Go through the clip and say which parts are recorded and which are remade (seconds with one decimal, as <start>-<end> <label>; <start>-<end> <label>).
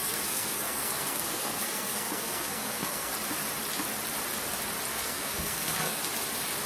0.0-3.1 remade; 3.1-4.9 recorded; 4.9-6.0 remade; 6.0-6.7 recorded